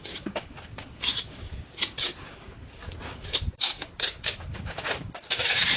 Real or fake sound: fake